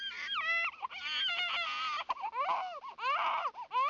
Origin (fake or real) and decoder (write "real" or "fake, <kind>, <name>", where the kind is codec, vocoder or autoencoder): real